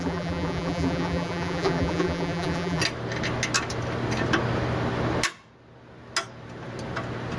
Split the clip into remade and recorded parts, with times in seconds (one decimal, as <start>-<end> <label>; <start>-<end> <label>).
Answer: 0.0-2.8 remade; 2.8-7.4 recorded